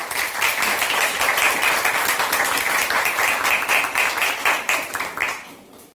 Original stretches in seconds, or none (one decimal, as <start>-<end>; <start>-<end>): 0.0-5.9

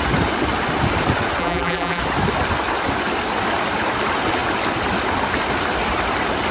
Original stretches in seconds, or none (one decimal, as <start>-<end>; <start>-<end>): 0.0-1.4; 2.0-6.5

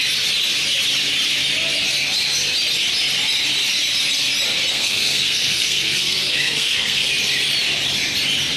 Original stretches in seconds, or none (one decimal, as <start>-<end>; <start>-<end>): 0.0-4.7; 7.1-8.6

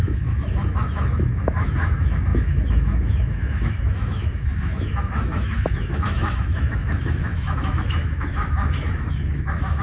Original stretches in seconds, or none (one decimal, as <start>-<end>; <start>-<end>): none